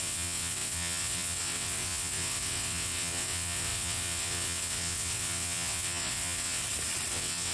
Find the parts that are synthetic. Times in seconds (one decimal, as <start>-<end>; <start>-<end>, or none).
0.0-6.6; 7.1-7.5